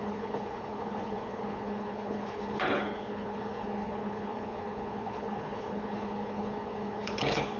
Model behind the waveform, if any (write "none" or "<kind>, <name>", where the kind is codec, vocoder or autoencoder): codec, HILCodec